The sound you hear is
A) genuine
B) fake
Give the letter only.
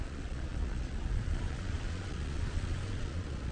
B